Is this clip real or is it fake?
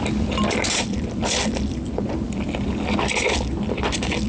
fake